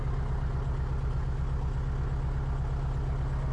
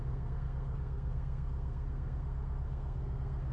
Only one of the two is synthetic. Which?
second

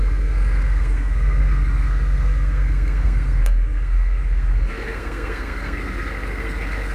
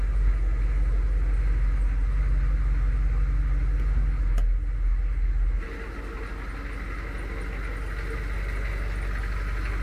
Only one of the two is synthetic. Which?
first